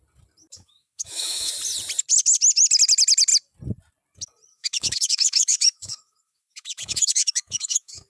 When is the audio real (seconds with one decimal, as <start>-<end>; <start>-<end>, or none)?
0.0-0.4; 1.5-4.5